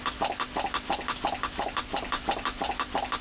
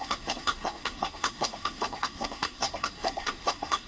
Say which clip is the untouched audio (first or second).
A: first